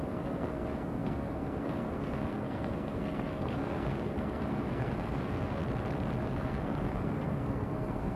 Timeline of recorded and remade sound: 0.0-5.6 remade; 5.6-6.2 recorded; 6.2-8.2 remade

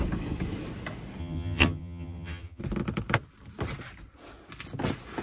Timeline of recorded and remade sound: 0.0-1.2 recorded; 1.2-2.6 remade; 2.6-5.2 recorded

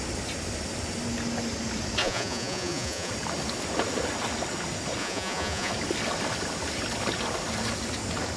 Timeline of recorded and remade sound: 0.0-2.0 recorded; 2.0-3.1 remade; 3.1-5.0 recorded; 5.0-5.7 remade; 5.7-8.4 recorded

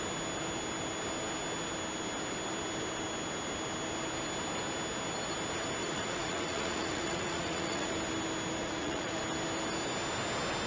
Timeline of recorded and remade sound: 0.0-5.8 recorded; 5.8-7.9 remade; 7.9-8.6 recorded; 8.6-9.2 remade; 9.2-10.7 recorded

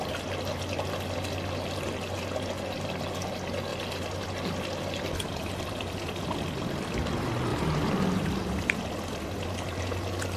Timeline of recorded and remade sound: 0.0-7.5 recorded; 7.5-8.8 remade; 8.8-10.4 recorded